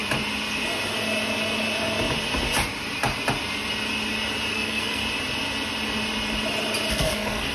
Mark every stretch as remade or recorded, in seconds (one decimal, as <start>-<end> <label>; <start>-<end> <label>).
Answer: 0.0-4.5 recorded; 4.5-5.0 remade; 5.0-6.9 recorded; 6.9-7.5 remade